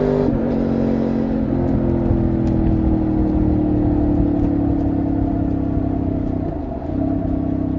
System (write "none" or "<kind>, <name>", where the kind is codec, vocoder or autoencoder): none